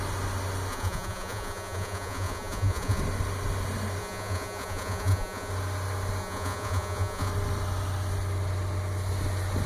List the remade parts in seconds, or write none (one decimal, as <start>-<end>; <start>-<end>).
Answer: 0.7-3.0; 4.0-5.5; 6.2-7.3